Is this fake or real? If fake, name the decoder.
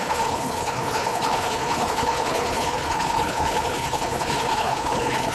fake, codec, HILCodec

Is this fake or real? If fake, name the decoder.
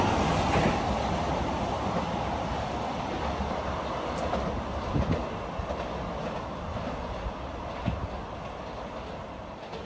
real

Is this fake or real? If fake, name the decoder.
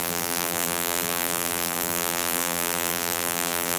fake, vocoder, BigVGAN v2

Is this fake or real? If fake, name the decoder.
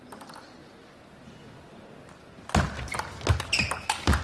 real